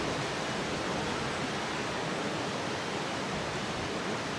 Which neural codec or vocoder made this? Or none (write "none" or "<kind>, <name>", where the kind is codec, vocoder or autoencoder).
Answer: none